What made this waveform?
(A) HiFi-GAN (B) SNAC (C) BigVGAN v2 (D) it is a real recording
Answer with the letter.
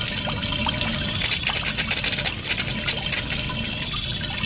D